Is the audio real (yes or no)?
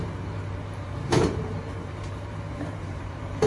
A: no